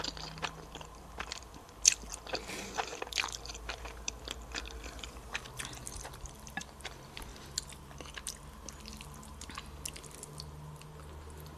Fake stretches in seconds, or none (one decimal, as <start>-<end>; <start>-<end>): 0.0-7.3